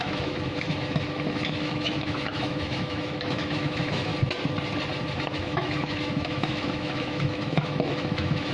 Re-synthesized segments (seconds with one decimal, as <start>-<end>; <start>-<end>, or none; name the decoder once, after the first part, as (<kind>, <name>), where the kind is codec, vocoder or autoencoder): 0.0-4.1 (autoencoder, DAC-VAE); 5.3-8.5